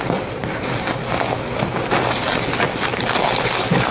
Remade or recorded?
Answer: recorded